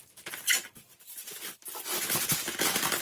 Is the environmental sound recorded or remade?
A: recorded